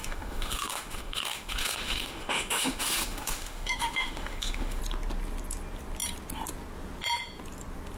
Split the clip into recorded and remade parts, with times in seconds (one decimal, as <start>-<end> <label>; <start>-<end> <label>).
0.0-4.8 remade; 4.8-8.0 recorded